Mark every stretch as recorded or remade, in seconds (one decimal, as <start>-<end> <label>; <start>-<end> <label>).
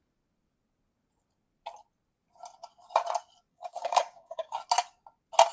0.0-3.5 recorded; 3.5-4.6 remade; 4.6-5.5 recorded